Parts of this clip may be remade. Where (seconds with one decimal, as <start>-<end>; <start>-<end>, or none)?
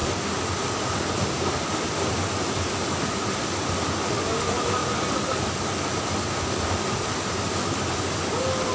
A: none